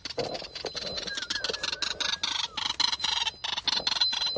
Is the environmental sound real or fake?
real